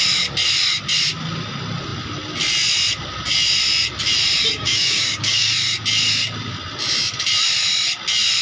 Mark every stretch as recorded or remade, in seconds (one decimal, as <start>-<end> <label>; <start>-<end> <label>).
0.0-4.5 recorded; 4.5-5.5 remade; 5.5-8.4 recorded

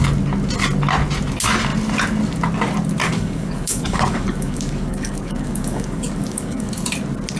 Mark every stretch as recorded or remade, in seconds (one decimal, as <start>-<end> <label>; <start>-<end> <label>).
0.0-3.0 recorded; 3.0-6.7 remade; 6.7-7.4 recorded

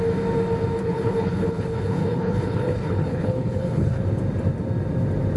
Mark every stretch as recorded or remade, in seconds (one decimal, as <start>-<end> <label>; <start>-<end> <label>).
0.0-0.8 recorded; 0.8-4.0 remade; 4.0-5.4 recorded

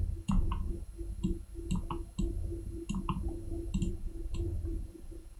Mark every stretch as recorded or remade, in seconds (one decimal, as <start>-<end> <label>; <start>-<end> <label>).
0.0-0.7 remade; 0.7-3.9 recorded; 3.9-5.4 remade

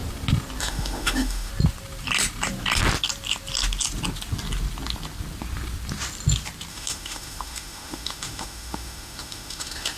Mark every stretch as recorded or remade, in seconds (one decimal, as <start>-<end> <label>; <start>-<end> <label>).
0.0-0.6 recorded; 0.6-1.5 remade; 1.5-6.7 recorded; 6.7-10.0 remade

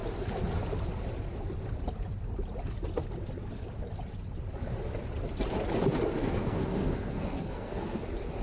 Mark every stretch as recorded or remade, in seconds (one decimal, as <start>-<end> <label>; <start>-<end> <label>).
0.0-6.2 recorded; 6.2-8.0 remade; 8.0-8.4 recorded

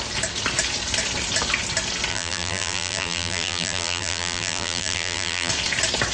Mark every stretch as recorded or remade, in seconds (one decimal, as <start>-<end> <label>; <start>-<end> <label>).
0.0-2.1 recorded; 2.1-5.5 remade; 5.5-6.1 recorded

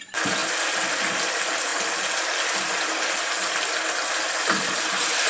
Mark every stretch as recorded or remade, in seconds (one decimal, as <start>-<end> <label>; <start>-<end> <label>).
0.0-5.3 recorded